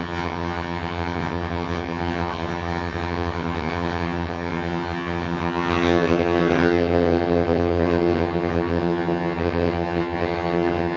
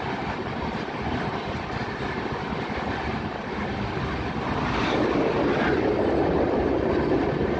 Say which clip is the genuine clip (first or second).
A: second